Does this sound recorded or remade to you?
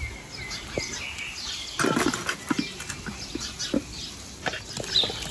recorded